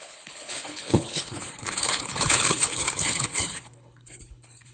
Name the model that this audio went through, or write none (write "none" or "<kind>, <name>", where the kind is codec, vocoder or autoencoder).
codec, HILCodec